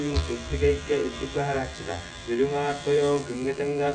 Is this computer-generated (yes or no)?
yes